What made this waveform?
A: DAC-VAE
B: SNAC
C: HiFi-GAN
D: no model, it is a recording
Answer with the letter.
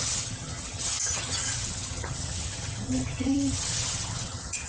C